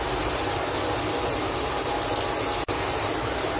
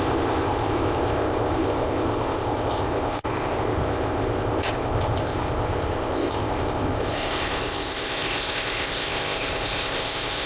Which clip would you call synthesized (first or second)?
second